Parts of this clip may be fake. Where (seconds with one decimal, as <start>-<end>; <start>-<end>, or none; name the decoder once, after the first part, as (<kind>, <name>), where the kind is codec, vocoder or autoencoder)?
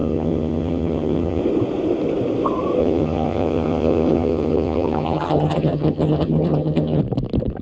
0.0-1.4 (vocoder, HiFi-GAN); 2.8-7.0